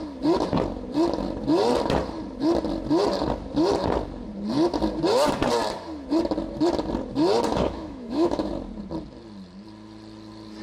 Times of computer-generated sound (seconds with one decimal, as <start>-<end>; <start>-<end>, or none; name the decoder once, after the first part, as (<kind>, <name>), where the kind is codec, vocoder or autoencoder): 7.5-8.5 (autoencoder, DAC-VAE)